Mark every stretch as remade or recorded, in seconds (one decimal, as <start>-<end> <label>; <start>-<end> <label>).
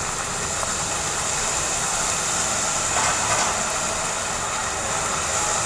0.0-5.7 recorded